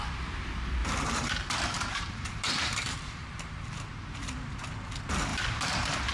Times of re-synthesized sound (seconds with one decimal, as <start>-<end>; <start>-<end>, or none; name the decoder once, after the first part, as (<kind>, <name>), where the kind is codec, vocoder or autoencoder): 0.8-4.5 (vocoder, BigVGAN v2); 5.3-6.1